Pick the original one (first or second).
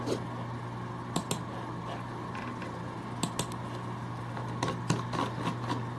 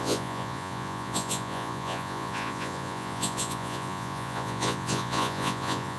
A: first